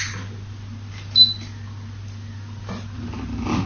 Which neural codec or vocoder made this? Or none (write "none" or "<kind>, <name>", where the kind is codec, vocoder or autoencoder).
none